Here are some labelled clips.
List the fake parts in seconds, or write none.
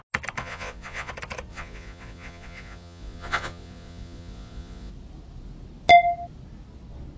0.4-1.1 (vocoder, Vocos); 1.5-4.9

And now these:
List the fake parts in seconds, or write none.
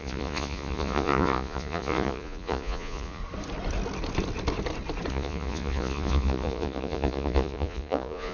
0.0-3.2 (vocoder, Vocos); 5.1-8.3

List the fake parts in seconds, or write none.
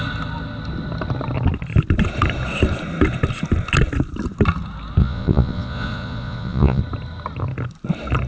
5.0-6.8 (vocoder, Vocos)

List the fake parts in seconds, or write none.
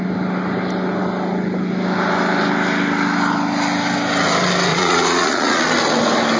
4.7-5.6 (vocoder, Vocos)